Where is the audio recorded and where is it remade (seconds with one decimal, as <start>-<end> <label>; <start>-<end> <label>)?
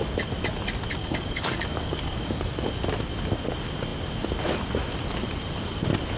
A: 0.0-1.0 recorded; 1.0-2.8 remade; 2.8-6.2 recorded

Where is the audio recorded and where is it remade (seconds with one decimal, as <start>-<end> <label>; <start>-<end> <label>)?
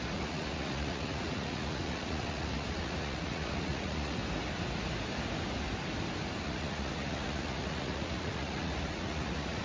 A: 0.0-4.2 remade; 4.2-6.4 recorded; 6.4-9.6 remade